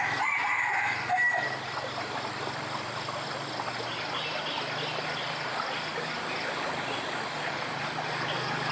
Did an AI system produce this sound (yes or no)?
no